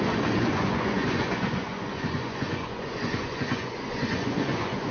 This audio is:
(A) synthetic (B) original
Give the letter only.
A